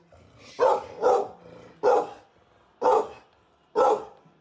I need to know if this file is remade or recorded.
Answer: recorded